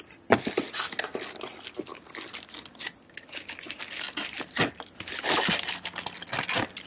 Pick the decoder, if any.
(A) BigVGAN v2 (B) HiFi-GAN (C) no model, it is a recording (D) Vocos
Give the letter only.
C